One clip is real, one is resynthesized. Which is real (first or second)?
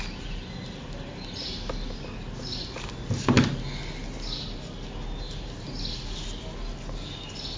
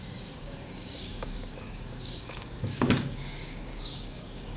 first